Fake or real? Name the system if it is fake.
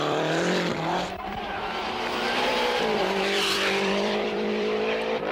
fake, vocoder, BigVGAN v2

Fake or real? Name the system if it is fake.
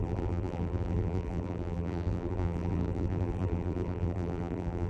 fake, vocoder, BigVGAN v2